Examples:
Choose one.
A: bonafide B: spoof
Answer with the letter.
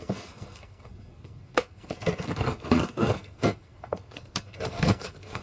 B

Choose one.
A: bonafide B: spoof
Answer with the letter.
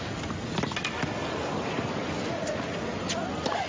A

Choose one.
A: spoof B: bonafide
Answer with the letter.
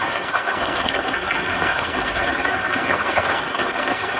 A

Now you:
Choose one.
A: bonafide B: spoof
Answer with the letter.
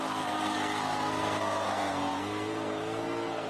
B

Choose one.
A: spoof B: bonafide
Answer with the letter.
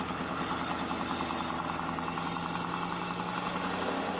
B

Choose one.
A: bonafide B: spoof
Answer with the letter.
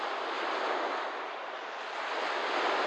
A